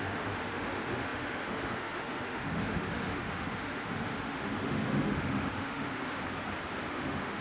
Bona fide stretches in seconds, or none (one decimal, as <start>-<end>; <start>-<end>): 6.2-6.9